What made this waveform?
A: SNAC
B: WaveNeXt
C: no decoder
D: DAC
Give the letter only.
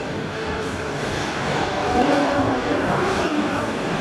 D